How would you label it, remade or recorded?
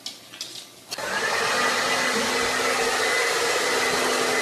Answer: recorded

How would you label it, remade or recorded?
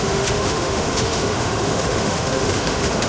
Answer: remade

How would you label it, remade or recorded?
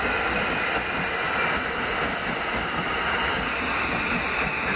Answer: recorded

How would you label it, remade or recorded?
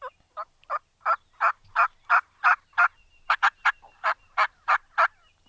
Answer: recorded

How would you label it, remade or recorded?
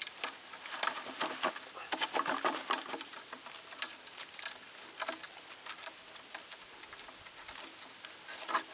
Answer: recorded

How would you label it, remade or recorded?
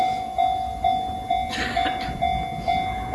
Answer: recorded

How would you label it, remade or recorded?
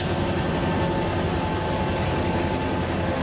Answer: recorded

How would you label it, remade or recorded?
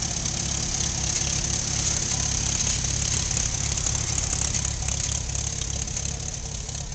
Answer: recorded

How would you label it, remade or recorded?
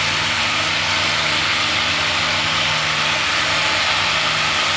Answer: recorded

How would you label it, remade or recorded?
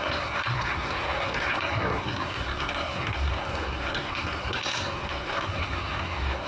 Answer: remade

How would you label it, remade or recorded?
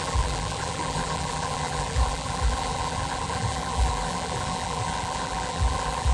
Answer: remade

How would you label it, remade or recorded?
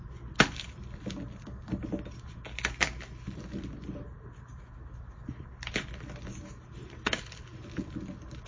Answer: recorded